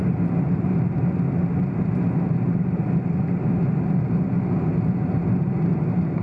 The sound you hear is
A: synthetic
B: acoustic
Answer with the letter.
B